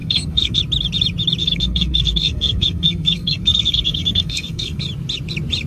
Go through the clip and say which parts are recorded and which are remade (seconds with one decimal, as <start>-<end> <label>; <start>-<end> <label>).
0.0-0.6 remade; 0.6-1.4 recorded; 1.4-4.8 remade; 4.8-5.7 recorded